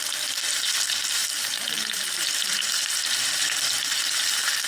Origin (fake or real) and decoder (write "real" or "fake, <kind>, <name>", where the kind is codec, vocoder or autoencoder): real